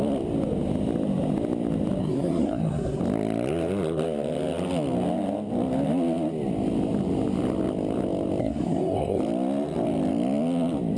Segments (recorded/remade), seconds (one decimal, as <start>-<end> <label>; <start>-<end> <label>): 0.0-2.0 recorded; 2.0-3.0 remade; 3.0-8.4 recorded; 8.4-9.2 remade; 9.2-11.0 recorded